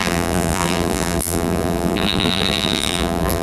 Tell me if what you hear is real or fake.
fake